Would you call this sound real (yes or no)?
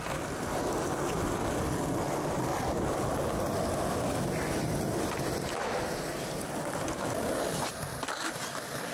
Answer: yes